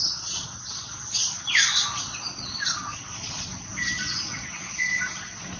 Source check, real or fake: fake